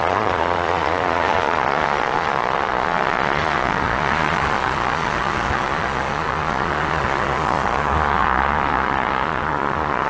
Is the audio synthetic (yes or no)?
yes